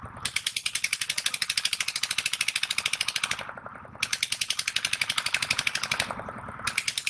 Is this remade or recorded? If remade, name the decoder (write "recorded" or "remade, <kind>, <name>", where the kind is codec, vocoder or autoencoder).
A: remade, vocoder, BigVGAN v2